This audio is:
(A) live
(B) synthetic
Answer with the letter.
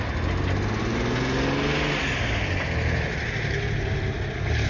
A